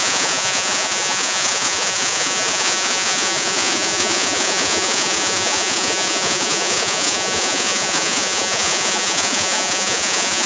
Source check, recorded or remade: remade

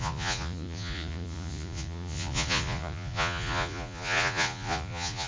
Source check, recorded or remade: remade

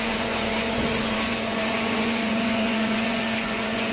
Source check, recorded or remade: remade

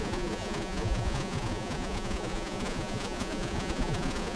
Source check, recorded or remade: remade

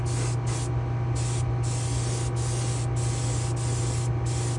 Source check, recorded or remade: recorded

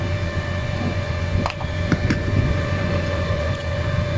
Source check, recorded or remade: remade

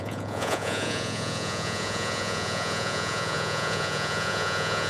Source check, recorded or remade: remade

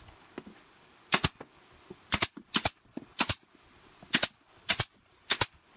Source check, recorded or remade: recorded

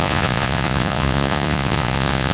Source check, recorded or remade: remade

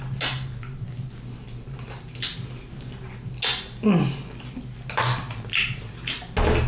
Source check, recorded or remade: recorded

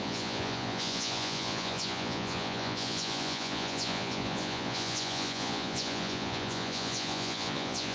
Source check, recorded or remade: remade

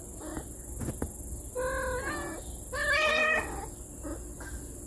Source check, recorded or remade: recorded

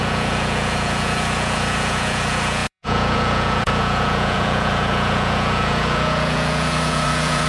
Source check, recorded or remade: remade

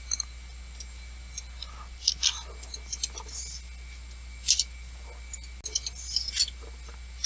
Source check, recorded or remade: recorded